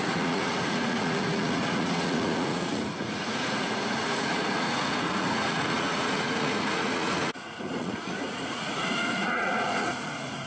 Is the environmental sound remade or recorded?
remade